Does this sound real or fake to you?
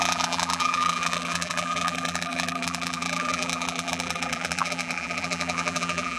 fake